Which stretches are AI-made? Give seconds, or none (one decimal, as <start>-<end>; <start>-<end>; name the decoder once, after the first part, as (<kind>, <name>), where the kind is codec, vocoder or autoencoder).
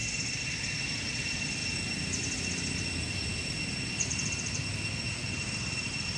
0.8-1.6 (vocoder, BigVGAN v2); 5.3-6.2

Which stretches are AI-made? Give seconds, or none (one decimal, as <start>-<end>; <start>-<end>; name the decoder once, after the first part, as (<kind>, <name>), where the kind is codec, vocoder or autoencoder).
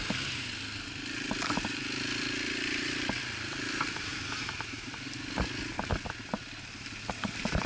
0.0-4.1 (vocoder, BigVGAN v2)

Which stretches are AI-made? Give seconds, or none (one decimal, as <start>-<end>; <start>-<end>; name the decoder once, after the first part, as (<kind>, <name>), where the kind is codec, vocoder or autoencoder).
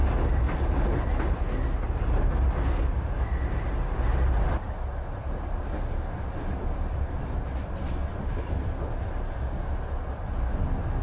none